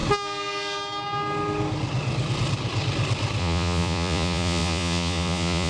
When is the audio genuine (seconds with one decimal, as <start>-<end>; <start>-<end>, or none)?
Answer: 0.0-3.4